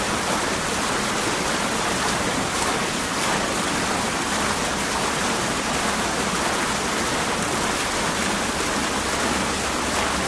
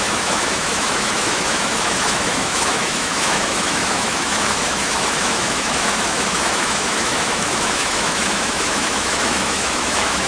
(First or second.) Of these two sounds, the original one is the first